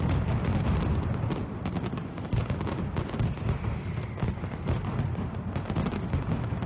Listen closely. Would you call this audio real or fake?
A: real